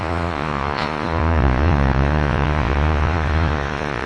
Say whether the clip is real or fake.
fake